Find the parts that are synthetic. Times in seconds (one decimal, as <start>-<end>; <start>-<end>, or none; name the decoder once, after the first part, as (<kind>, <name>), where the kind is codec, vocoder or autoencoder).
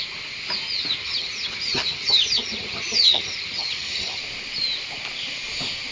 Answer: 1.0-4.2 (vocoder, HiFi-GAN)